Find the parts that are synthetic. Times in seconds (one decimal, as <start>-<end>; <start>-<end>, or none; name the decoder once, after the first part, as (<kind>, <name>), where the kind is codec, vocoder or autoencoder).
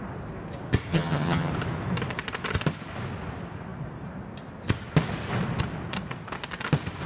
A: 0.9-1.5 (vocoder, HiFi-GAN)